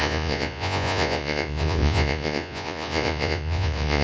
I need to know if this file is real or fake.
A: fake